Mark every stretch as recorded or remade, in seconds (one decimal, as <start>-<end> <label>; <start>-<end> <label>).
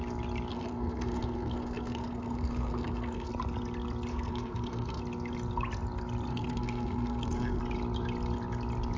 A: 0.0-0.5 recorded; 0.5-3.3 remade; 3.3-4.1 recorded; 4.1-5.0 remade; 5.0-6.3 recorded; 6.3-7.6 remade; 7.6-9.0 recorded